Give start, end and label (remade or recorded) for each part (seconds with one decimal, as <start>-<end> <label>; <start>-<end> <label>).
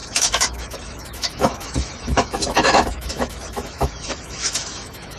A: 0.0-5.2 remade